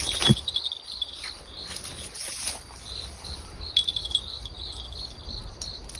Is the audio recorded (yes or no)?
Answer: yes